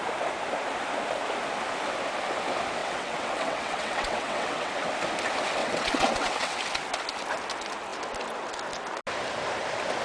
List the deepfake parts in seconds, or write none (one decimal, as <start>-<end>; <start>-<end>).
2.8-4.7; 5.6-6.6